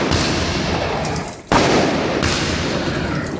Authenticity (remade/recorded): recorded